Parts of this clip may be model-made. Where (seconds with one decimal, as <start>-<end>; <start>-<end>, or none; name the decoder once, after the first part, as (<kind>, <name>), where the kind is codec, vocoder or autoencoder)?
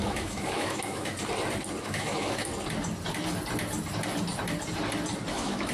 0.0-1.1 (autoencoder, DAC-VAE); 1.8-2.5; 5.3-5.7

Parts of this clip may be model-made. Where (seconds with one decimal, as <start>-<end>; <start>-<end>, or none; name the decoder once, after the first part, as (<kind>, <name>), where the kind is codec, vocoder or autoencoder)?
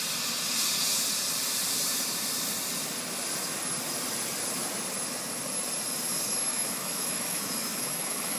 6.5-8.4 (autoencoder, DAC-VAE)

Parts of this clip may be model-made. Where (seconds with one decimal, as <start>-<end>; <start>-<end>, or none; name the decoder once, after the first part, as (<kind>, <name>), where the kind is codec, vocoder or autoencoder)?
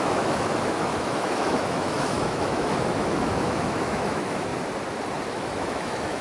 0.0-4.5 (autoencoder, DAC-VAE); 5.3-6.2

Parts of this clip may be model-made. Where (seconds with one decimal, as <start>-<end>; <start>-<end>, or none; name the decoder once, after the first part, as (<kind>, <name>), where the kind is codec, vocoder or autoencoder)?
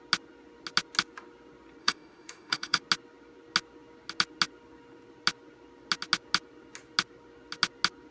1.8-2.8 (autoencoder, DAC-VAE)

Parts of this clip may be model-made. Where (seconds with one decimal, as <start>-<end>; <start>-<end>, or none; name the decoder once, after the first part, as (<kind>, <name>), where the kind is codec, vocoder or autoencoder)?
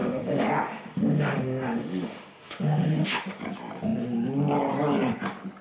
0.0-3.4 (autoencoder, DAC-VAE)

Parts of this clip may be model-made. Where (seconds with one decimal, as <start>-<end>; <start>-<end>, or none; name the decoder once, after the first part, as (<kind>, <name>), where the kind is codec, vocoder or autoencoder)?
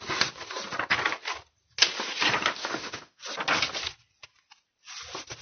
2.6-3.2 (autoencoder, DAC-VAE)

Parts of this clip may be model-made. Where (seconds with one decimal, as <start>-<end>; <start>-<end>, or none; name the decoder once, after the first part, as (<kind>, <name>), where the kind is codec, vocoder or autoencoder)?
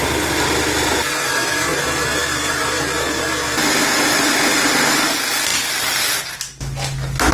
none